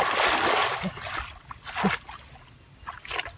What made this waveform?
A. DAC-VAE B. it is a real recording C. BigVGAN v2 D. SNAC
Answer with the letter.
B